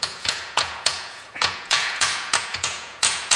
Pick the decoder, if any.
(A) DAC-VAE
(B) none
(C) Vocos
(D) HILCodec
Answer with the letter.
C